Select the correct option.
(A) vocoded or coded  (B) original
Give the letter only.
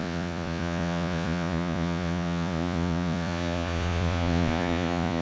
A